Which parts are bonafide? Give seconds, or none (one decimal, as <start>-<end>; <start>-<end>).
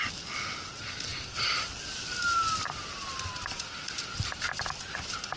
0.0-5.4